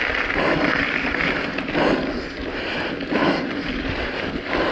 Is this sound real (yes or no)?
yes